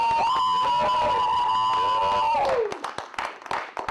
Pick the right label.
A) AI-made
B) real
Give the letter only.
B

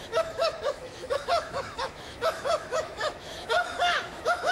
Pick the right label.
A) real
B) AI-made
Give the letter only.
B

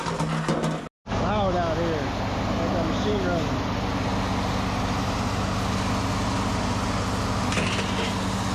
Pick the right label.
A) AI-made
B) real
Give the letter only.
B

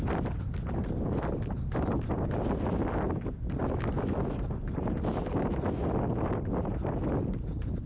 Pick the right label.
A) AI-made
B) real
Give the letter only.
B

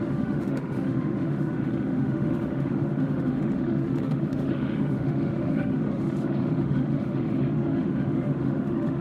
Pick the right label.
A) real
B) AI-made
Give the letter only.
B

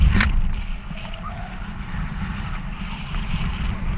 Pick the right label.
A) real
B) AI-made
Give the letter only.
A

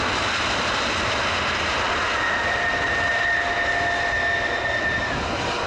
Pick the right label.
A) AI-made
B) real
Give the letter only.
B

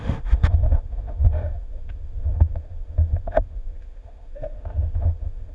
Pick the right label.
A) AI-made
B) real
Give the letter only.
A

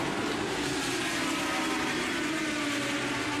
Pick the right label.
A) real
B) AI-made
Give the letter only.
A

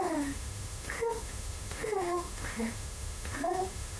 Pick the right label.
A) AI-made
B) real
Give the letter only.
A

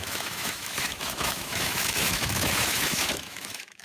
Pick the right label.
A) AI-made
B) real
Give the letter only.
A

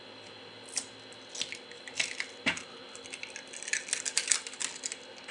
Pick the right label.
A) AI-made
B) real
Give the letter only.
B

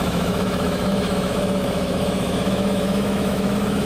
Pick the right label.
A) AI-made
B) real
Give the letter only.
A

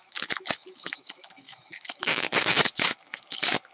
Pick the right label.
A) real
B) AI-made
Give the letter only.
B